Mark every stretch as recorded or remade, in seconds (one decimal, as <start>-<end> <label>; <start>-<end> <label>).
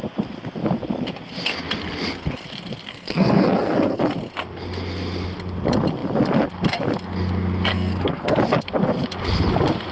0.0-2.9 recorded; 2.9-4.0 remade; 4.0-7.7 recorded; 7.7-8.4 remade; 8.4-9.9 recorded